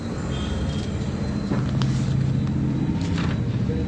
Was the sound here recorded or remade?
recorded